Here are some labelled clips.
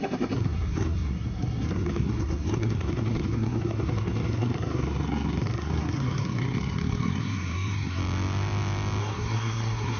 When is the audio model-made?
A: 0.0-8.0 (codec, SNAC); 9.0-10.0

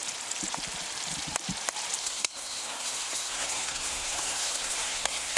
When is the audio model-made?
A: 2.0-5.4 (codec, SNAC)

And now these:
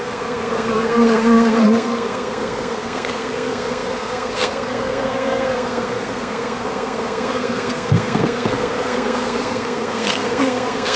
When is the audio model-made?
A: 0.0-11.0 (codec, SNAC)

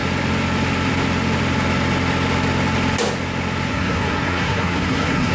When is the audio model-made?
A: 3.7-5.3 (codec, SNAC)

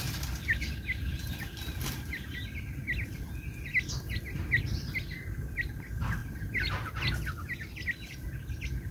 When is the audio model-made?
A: none

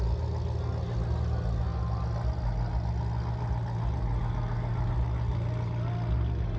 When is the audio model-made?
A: none